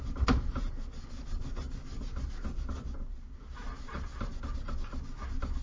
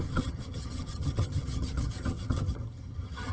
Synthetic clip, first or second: second